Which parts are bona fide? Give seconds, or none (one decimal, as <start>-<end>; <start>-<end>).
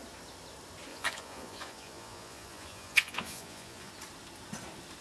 0.0-0.9; 3.9-5.0